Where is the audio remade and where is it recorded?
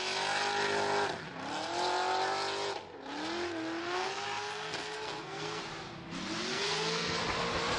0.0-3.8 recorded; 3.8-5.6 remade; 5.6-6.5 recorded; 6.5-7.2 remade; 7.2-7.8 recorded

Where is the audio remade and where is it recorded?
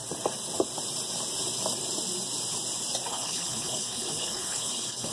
0.0-3.1 recorded; 3.1-5.1 remade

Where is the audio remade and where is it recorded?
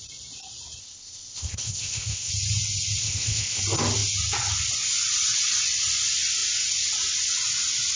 0.0-0.8 recorded; 0.8-2.3 remade; 2.3-3.0 recorded; 3.0-3.6 remade; 3.6-8.0 recorded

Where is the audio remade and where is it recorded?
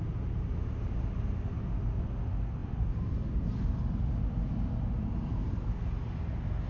0.0-6.7 recorded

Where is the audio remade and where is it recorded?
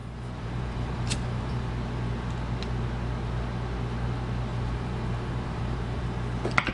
0.0-1.7 remade; 1.7-4.5 recorded; 4.5-6.0 remade; 6.0-6.7 recorded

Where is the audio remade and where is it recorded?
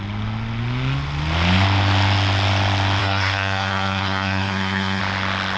0.0-3.0 recorded; 3.0-5.0 remade; 5.0-5.6 recorded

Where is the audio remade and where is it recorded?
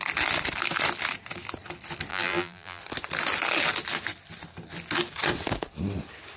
0.0-2.1 recorded; 2.1-2.8 remade; 2.8-6.4 recorded